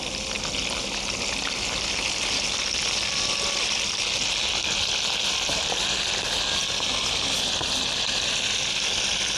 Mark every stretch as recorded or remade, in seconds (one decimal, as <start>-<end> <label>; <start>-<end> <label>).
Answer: 0.0-6.6 recorded; 6.6-8.6 remade; 8.6-9.4 recorded